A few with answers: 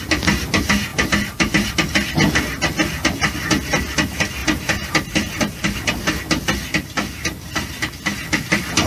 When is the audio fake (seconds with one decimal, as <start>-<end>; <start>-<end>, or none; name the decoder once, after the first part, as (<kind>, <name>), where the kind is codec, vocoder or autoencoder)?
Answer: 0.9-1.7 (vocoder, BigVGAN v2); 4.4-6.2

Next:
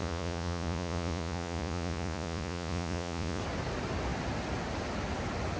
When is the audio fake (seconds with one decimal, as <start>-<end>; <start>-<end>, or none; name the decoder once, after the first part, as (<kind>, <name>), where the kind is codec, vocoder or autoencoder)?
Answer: 0.0-3.4 (vocoder, Vocos)

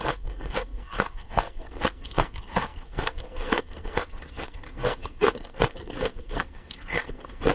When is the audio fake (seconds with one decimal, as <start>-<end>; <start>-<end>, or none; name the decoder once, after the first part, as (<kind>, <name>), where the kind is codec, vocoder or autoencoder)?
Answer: 0.0-7.5 (codec, SNAC)

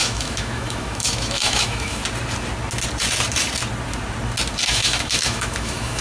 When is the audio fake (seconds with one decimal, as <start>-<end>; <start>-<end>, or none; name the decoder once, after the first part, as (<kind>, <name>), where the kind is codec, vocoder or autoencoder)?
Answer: 0.0-2.0 (autoencoder, DAC-VAE); 4.7-6.0

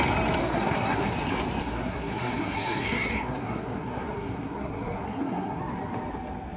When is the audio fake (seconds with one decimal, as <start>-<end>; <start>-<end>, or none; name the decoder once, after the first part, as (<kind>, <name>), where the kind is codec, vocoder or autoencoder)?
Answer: 0.4-1.1 (codec, SNAC); 1.6-5.6